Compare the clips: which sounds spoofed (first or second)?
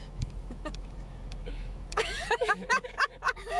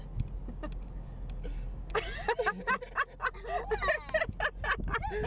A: first